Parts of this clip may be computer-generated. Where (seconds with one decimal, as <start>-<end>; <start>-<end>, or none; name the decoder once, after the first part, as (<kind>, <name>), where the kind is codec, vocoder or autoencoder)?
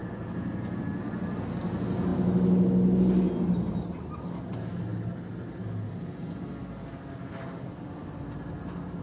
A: none